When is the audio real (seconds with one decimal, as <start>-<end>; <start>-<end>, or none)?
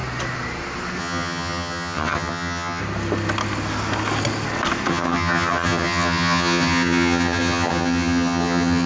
0.0-1.0; 2.8-4.9